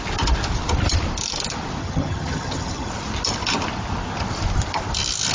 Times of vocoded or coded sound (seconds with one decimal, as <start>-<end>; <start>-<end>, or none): 1.8-2.9

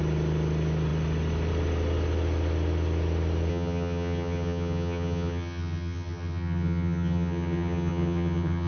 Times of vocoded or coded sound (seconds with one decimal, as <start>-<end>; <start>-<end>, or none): 3.5-8.7